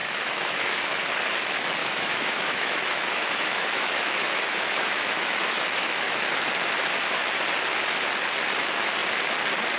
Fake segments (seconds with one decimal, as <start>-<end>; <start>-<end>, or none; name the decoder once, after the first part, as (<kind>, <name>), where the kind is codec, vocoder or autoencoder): 0.0-1.1 (autoencoder, DAC-VAE); 1.8-6.2